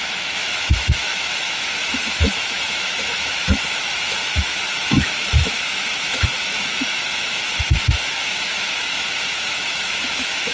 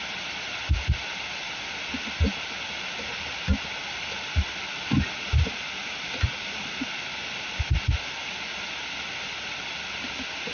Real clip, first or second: second